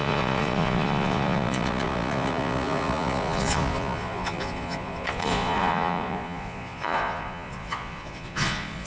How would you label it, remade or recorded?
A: remade